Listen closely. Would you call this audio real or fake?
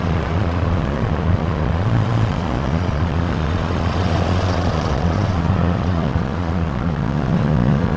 fake